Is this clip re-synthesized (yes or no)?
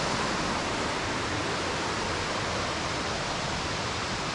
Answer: no